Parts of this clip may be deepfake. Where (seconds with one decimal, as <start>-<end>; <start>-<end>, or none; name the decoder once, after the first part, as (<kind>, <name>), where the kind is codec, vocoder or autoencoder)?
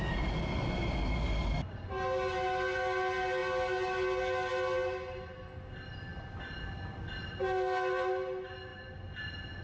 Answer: none